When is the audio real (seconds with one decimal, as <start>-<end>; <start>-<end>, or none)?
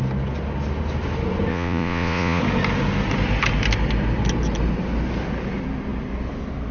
0.0-1.5; 2.4-6.7